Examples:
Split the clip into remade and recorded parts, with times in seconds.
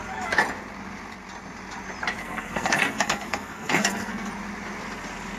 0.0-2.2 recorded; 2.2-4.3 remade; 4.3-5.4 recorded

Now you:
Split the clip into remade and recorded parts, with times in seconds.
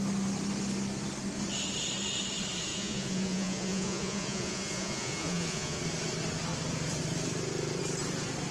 0.0-2.7 recorded; 2.7-5.8 remade; 5.8-8.5 recorded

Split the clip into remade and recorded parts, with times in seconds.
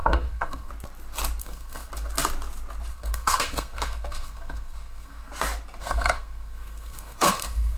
0.0-0.7 remade; 0.7-1.4 recorded; 1.4-1.9 remade; 1.9-2.9 recorded; 2.9-5.3 remade; 5.3-5.8 recorded; 5.8-7.8 remade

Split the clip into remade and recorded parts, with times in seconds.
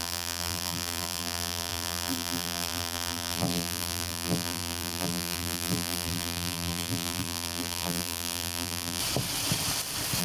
0.0-9.0 remade; 9.0-10.2 recorded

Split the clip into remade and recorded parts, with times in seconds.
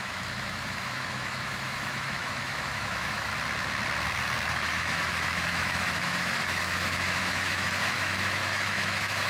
0.0-3.3 remade; 3.3-4.5 recorded; 4.5-9.3 remade